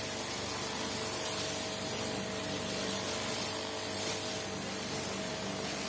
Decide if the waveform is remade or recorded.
recorded